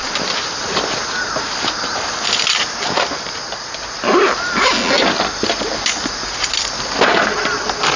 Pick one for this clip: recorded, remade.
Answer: recorded